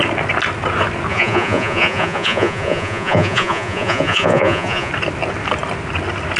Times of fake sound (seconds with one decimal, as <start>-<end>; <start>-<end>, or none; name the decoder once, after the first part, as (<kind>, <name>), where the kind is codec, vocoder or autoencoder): 1.1-4.9 (vocoder, Vocos)